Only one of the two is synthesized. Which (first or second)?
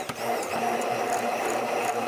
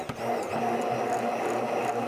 first